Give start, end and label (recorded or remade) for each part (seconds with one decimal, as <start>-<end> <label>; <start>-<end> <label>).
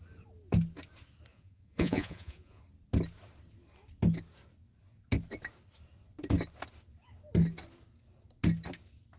0.0-1.3 recorded; 1.3-2.6 remade; 2.6-9.2 recorded